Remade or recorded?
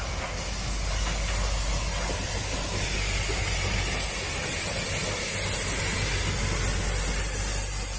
recorded